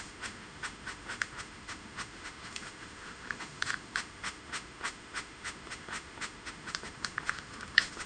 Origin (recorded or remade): remade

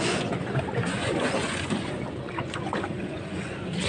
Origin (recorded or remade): remade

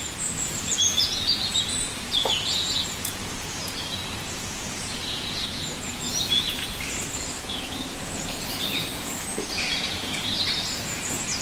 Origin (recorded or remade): remade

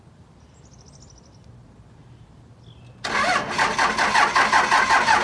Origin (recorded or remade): recorded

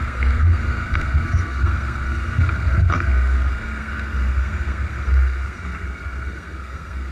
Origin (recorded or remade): remade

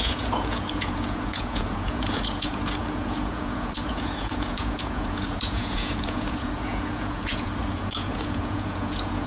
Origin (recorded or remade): remade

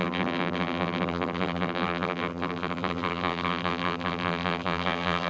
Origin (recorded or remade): remade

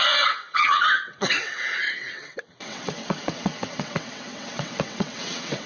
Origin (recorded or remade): remade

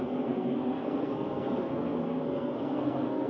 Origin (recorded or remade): remade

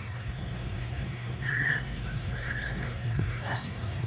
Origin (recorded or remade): remade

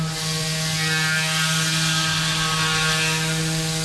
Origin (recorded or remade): recorded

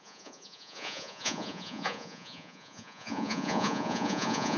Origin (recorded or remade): remade